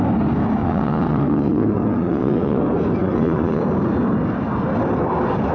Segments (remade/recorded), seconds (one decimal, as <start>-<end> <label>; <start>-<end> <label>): 0.0-0.6 recorded; 0.6-2.6 remade; 2.6-3.0 recorded; 3.0-3.6 remade; 3.6-5.5 recorded